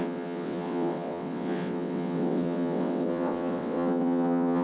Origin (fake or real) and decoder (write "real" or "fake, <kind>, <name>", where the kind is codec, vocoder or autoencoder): fake, vocoder, WaveNeXt